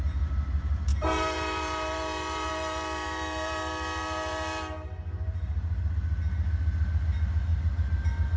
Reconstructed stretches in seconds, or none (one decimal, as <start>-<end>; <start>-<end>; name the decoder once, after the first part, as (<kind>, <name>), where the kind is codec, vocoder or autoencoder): 0.9-5.9 (vocoder, BigVGAN v2)